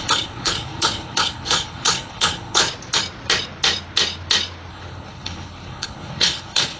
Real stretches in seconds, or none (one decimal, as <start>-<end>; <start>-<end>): 2.6-4.7